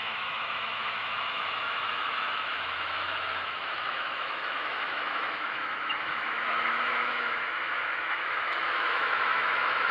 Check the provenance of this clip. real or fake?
fake